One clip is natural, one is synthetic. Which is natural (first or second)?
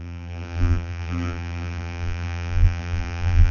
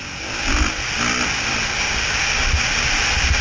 second